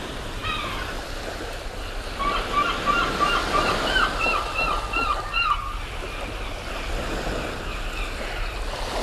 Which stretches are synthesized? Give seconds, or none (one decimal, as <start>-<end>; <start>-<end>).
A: none